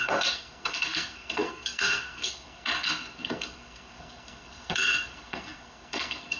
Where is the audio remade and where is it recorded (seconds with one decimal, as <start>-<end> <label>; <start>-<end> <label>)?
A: 0.0-6.4 remade